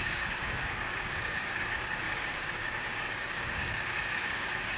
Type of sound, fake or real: fake